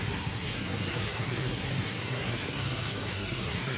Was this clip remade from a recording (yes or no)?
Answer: yes